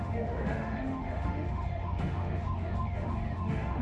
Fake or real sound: fake